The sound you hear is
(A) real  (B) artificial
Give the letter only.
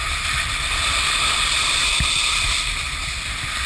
A